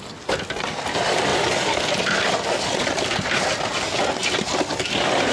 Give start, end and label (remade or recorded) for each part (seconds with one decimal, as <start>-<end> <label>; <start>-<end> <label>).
0.0-5.3 recorded